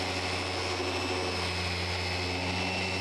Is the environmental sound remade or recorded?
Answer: recorded